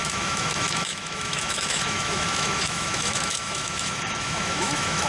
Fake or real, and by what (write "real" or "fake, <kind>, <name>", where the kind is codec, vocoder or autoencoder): fake, autoencoder, DAC-VAE